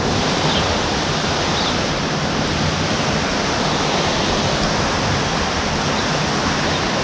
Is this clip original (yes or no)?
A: yes